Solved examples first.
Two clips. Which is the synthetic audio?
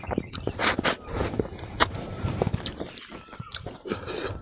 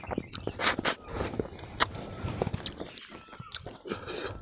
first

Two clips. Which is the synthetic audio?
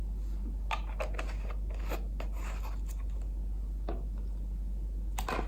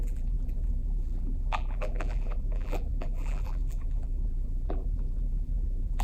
second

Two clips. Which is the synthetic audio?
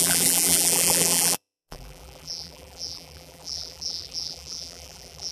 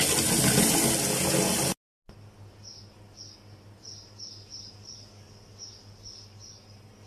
first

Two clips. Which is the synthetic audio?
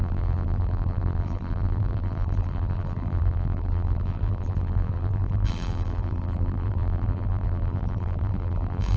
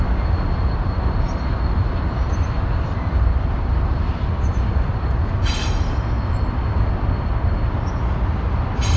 first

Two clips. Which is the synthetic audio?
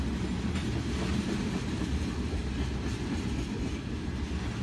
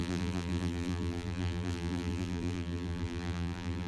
second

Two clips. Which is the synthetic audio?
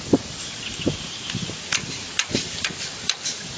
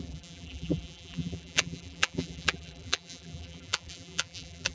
second